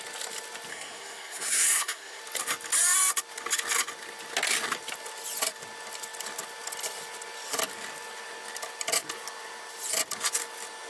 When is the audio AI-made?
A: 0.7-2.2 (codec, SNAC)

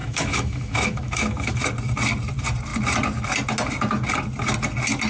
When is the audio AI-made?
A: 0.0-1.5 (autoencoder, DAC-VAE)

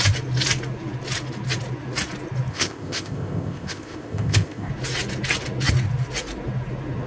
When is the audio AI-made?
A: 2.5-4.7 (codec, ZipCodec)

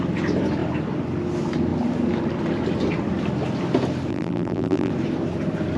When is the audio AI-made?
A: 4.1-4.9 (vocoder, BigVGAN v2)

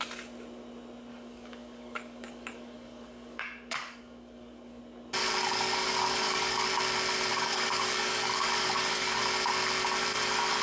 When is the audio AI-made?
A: 1.1-4.8 (codec, DAC); 5.2-6.7; 7.3-9.2

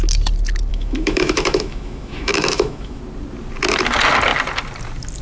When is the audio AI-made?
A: 0.7-3.0 (autoencoder, DAC-VAE)